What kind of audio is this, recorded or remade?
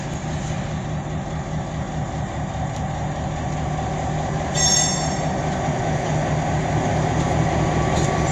recorded